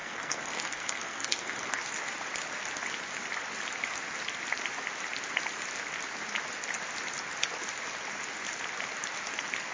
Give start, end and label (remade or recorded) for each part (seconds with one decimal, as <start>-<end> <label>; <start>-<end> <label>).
0.0-1.8 remade; 1.8-9.7 recorded